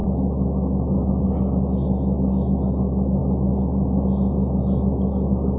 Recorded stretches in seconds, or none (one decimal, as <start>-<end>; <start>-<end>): 0.0-5.6